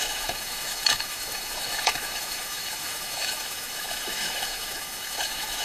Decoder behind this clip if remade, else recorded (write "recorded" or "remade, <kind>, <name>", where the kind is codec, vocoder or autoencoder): remade, autoencoder, DAC-VAE